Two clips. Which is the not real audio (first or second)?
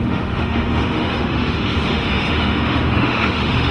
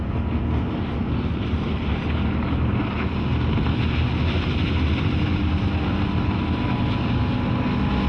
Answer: first